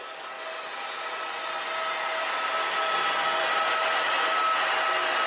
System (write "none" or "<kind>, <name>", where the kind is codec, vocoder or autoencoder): none